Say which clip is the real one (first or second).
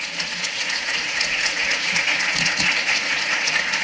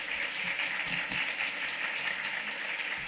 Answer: second